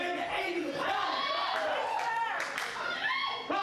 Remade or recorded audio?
recorded